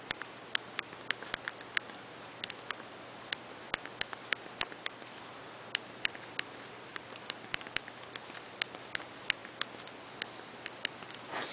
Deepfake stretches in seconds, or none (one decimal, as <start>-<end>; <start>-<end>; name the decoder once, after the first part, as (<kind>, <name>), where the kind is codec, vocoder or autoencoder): 6.9-7.9 (vocoder, BigVGAN v2)